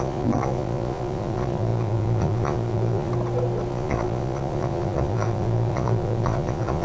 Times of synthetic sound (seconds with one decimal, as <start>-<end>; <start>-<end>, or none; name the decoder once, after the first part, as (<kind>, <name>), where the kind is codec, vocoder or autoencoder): 0.0-3.1 (vocoder, Vocos); 3.7-6.8